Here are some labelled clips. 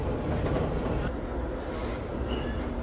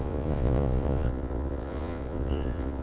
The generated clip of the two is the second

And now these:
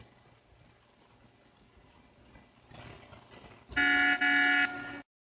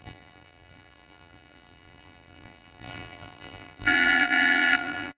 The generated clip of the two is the second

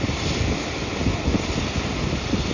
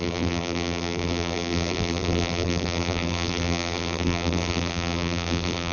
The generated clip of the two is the second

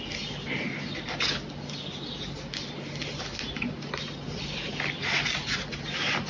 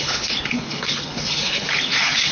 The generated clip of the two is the second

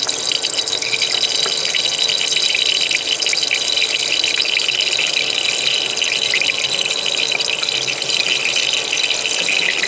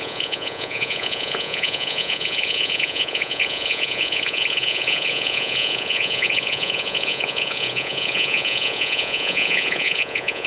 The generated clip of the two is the second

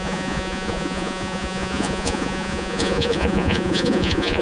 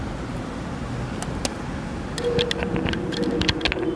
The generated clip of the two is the first